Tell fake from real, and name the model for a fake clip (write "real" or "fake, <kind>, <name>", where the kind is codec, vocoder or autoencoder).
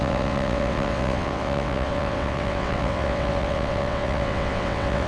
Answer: fake, vocoder, WaveNeXt